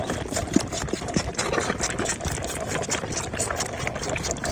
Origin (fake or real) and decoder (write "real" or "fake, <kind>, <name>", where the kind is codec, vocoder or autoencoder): real